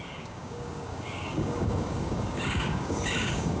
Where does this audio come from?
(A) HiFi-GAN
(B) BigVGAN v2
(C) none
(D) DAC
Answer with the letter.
D